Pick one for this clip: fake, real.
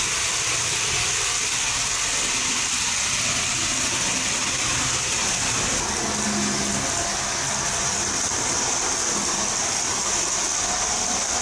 real